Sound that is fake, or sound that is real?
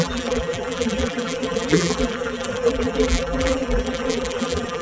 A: fake